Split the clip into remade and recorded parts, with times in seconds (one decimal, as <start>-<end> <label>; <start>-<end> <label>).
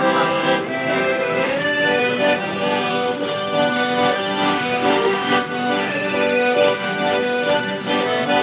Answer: 0.0-1.0 recorded; 1.0-2.0 remade; 2.0-2.9 recorded; 2.9-7.9 remade; 7.9-8.4 recorded